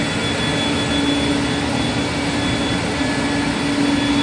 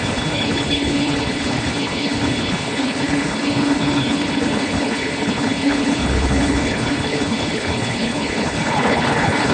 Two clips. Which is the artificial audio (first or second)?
second